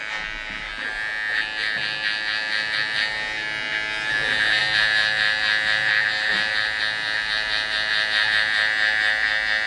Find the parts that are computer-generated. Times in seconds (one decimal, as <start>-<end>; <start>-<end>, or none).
none